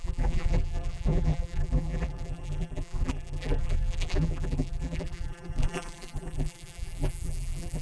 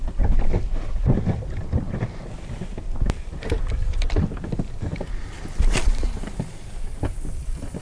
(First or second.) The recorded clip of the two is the second